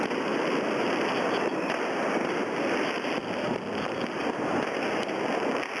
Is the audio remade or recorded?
recorded